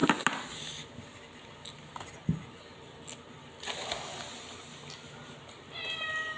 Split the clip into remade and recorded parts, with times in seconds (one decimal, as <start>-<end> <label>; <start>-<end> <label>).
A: 0.0-6.4 recorded